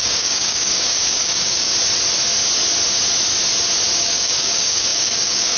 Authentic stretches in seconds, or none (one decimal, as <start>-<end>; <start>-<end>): 1.7-4.0